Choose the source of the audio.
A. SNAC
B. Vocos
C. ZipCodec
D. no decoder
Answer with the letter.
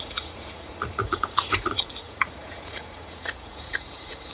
B